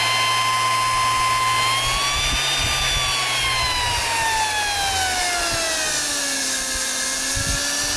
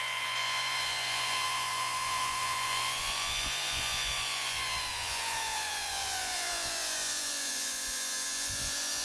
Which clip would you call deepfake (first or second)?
second